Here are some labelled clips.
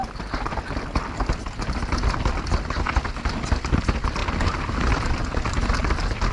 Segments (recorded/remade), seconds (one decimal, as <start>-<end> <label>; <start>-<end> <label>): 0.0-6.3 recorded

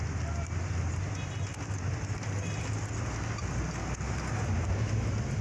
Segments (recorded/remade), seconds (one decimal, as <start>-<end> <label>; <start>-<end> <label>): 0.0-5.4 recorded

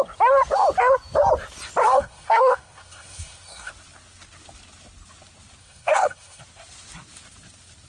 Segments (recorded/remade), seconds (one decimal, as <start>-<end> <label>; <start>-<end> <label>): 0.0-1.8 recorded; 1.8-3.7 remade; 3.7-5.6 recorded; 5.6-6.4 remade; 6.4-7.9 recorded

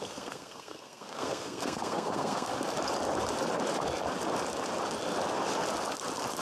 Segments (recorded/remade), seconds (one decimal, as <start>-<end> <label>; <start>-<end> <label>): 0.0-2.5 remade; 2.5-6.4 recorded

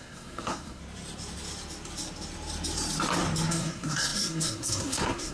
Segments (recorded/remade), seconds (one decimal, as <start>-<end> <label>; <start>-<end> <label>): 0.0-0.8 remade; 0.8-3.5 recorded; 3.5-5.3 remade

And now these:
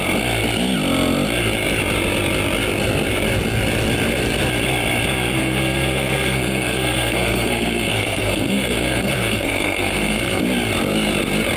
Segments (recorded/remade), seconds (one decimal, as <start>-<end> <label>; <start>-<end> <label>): 0.0-5.4 recorded; 5.4-10.4 remade; 10.4-11.6 recorded

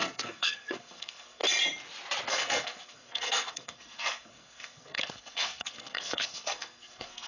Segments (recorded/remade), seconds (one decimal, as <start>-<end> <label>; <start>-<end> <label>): 0.0-1.4 remade; 1.4-2.3 recorded; 2.3-7.3 remade

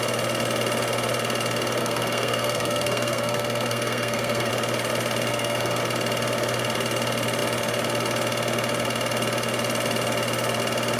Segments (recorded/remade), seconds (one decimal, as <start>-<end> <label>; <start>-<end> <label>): 0.0-1.8 recorded; 1.8-4.5 remade; 4.5-5.3 recorded; 5.3-5.8 remade; 5.8-11.0 recorded